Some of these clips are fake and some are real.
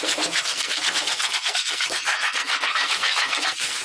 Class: fake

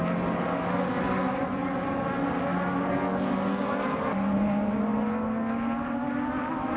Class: real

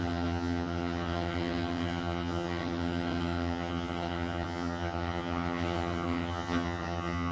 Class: fake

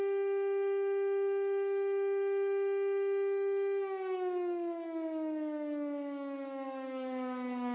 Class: fake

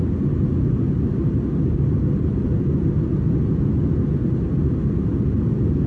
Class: real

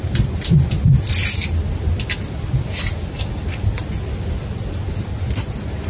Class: real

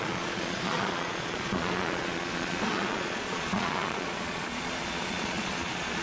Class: fake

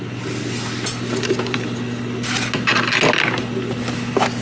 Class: real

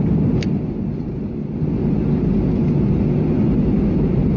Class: real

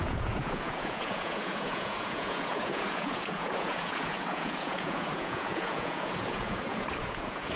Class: fake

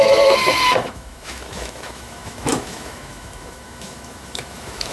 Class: fake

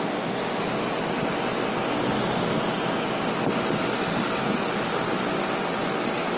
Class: real